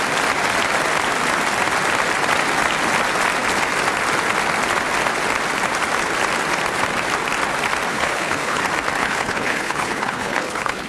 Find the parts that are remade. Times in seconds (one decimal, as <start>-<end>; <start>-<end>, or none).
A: 7.9-8.6; 9.0-10.9